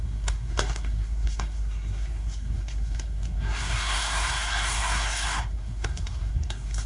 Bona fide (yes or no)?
no